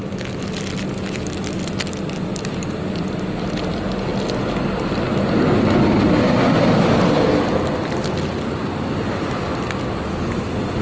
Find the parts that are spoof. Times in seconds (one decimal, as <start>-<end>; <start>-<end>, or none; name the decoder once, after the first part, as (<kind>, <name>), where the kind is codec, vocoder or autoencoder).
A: none